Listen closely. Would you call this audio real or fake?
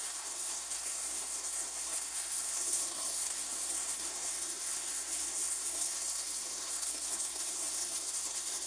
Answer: fake